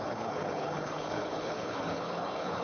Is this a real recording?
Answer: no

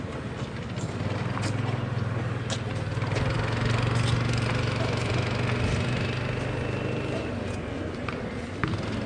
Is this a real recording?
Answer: yes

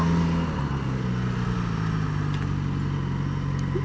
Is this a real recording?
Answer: yes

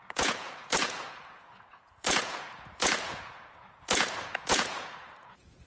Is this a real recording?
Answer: no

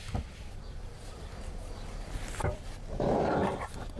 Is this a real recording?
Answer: no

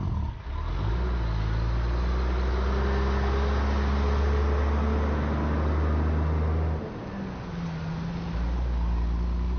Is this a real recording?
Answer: yes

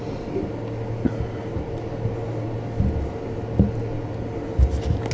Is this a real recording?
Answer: yes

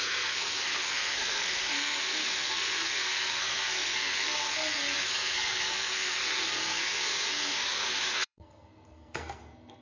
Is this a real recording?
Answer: no